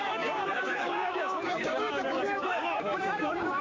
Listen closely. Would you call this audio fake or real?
fake